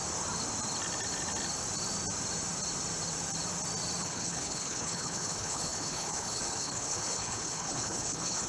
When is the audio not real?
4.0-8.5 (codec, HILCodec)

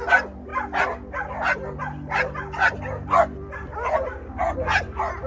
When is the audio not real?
none

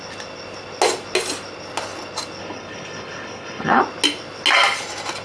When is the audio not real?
2.4-3.8 (codec, HILCodec)

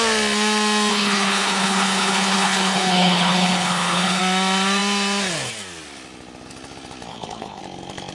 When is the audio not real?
0.9-4.2 (codec, HILCodec); 7.1-7.6

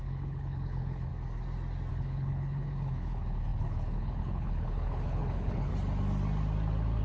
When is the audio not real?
0.0-1.1 (codec, HILCodec); 1.9-5.7

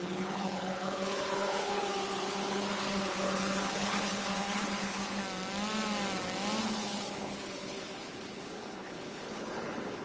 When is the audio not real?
0.0-5.2 (codec, HILCodec); 6.6-10.0